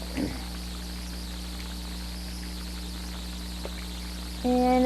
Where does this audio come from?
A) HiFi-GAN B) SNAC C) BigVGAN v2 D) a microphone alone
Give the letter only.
D